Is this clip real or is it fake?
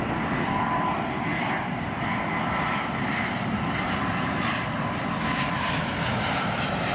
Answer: fake